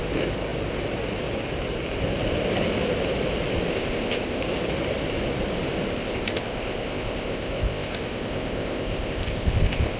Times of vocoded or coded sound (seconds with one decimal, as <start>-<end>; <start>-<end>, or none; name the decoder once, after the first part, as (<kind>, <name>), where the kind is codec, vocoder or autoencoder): 3.7-4.4 (codec, ZipCodec); 5.9-10.0